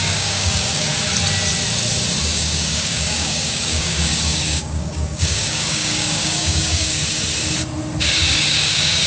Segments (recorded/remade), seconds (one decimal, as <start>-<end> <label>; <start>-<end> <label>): 0.0-0.9 remade; 0.9-2.2 recorded; 2.2-7.0 remade; 7.0-8.0 recorded; 8.0-9.1 remade